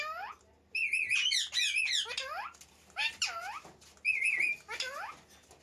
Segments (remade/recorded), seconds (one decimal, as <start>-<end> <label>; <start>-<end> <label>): 0.0-5.6 recorded